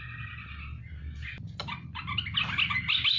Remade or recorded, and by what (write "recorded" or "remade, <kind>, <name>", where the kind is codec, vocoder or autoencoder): recorded